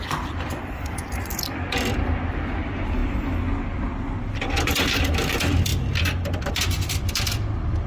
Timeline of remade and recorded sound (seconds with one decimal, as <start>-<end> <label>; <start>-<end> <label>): 0.0-3.0 remade; 3.0-4.2 recorded; 4.2-7.9 remade